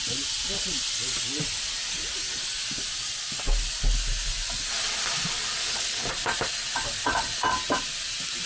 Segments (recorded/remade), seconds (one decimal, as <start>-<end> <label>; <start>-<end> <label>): 0.0-5.6 recorded; 5.6-6.1 remade; 6.1-8.5 recorded